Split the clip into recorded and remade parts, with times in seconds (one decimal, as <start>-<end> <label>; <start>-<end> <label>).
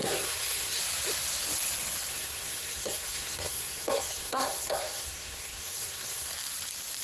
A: 0.0-0.8 remade; 0.8-2.1 recorded; 2.1-6.3 remade; 6.3-7.0 recorded